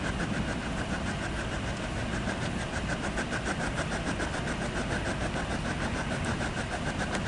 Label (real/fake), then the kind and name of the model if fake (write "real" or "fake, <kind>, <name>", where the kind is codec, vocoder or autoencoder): real